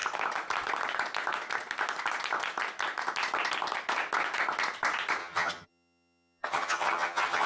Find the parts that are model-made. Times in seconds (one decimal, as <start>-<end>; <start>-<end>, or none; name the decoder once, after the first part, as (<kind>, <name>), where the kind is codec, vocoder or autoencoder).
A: 5.2-7.5 (vocoder, HiFi-GAN)